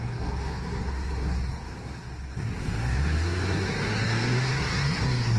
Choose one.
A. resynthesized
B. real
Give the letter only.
A